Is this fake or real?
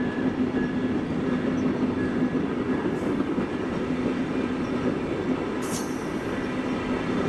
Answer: real